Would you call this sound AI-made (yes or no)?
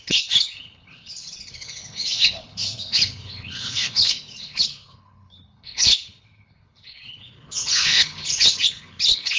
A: yes